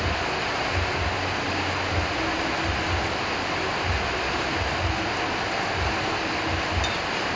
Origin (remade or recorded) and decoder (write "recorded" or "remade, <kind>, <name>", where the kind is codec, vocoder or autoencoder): recorded